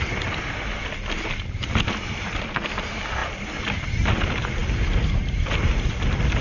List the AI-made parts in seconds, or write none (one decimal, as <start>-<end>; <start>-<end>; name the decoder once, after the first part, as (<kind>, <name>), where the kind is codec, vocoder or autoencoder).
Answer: none